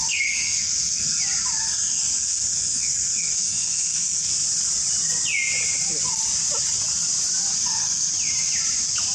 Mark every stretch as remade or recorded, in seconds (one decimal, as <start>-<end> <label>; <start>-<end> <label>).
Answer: 0.0-1.2 remade; 1.2-1.6 recorded; 1.6-4.3 remade; 4.3-7.6 recorded; 7.6-8.1 remade; 8.1-9.1 recorded